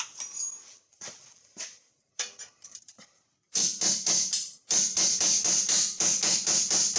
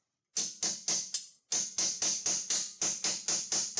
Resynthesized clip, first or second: first